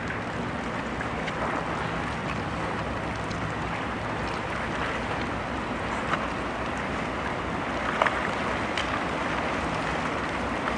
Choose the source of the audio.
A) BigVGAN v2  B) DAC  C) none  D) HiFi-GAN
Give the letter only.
C